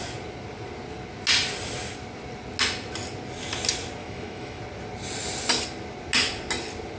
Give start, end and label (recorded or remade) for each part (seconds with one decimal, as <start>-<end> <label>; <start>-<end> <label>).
0.0-4.0 recorded; 4.0-4.6 remade; 4.6-7.0 recorded